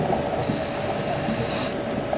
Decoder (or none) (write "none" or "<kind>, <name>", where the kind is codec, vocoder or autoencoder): none